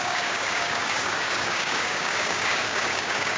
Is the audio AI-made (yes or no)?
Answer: yes